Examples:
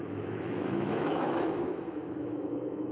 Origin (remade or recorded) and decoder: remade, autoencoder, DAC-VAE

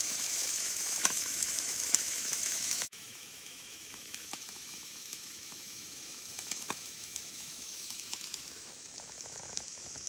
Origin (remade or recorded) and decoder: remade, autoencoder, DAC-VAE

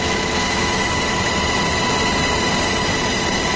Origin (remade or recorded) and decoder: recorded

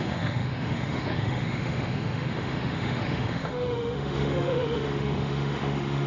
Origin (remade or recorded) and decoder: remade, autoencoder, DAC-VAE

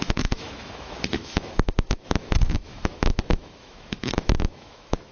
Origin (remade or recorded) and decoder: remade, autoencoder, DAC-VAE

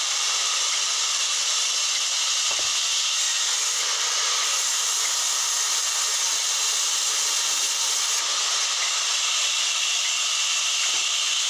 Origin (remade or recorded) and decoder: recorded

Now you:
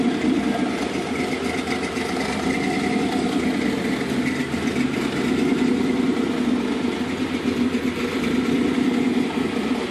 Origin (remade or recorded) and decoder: recorded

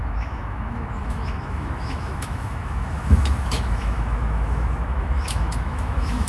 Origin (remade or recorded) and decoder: remade, autoencoder, DAC-VAE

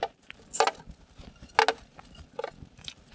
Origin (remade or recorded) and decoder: recorded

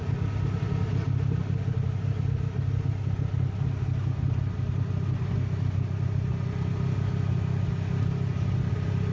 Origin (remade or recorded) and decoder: recorded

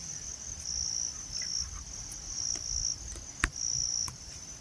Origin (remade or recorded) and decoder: recorded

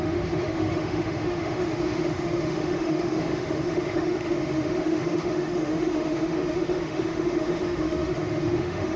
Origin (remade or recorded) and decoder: remade, autoencoder, DAC-VAE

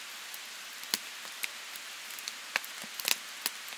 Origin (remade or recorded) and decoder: recorded